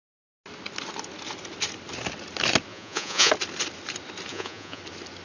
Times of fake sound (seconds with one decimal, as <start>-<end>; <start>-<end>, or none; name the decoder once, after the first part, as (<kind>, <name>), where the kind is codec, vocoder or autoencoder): 2.7-3.3 (vocoder, Vocos); 4.3-4.8